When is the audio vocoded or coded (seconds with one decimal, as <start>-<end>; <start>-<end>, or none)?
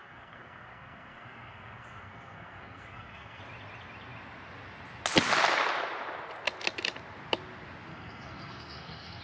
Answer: 0.0-3.4; 7.9-9.2